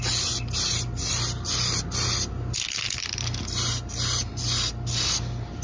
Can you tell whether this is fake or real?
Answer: real